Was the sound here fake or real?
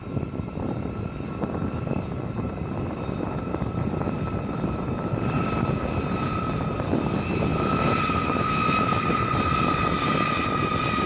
fake